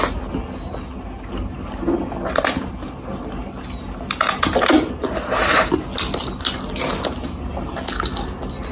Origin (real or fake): real